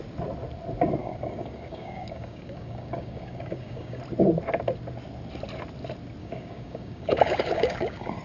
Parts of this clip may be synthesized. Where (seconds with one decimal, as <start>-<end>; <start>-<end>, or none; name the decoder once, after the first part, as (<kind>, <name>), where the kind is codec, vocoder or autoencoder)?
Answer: 1.0-4.0 (codec, DAC); 6.2-8.2